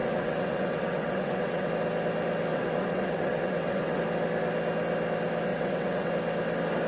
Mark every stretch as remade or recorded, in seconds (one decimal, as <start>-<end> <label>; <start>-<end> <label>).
0.0-1.7 remade; 1.7-2.5 recorded; 2.5-4.0 remade; 4.0-5.5 recorded; 5.5-6.1 remade; 6.1-6.9 recorded